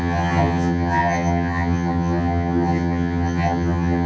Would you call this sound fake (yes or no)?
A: yes